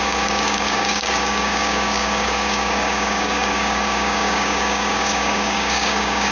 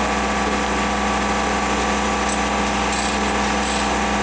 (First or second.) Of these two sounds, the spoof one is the first